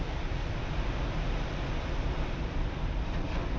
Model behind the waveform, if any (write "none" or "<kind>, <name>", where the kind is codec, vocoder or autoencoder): none